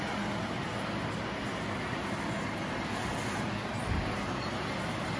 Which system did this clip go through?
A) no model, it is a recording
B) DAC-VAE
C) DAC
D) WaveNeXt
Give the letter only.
A